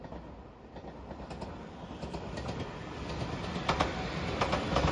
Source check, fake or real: real